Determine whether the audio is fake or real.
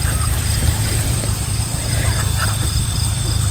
fake